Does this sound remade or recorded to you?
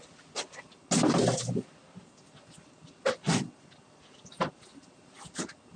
recorded